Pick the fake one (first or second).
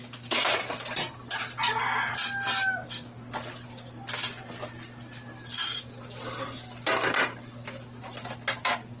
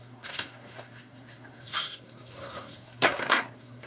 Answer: second